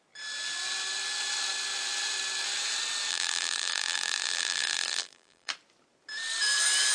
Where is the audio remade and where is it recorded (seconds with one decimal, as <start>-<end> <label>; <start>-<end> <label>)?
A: 0.0-3.1 recorded; 3.1-5.5 remade; 5.5-6.9 recorded